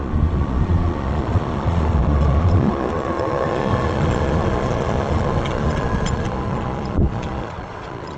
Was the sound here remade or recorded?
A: remade